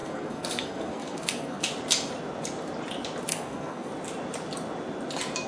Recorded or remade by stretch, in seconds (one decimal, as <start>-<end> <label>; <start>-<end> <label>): 0.0-1.6 remade; 1.6-3.3 recorded; 3.3-3.9 remade; 3.9-5.5 recorded